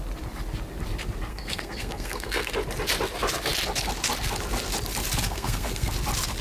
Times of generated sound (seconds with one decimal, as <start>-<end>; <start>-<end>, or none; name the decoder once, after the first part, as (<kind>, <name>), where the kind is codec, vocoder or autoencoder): 1.3-2.5 (codec, SNAC); 5.2-5.9

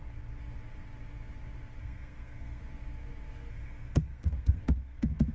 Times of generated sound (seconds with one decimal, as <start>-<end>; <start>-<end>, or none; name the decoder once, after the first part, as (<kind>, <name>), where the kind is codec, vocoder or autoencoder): 1.8-2.6 (codec, SNAC); 3.5-5.3

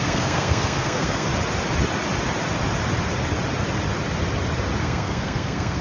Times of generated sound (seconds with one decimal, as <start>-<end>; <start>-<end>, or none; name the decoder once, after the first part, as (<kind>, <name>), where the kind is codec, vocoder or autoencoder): 0.0-1.3 (codec, SNAC); 4.8-5.8